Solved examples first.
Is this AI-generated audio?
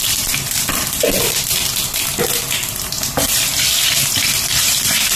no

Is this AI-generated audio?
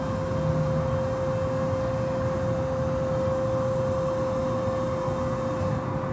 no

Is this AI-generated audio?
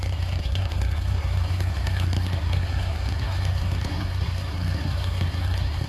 yes